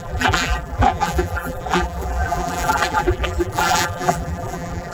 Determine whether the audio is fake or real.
fake